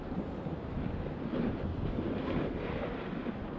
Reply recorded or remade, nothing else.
recorded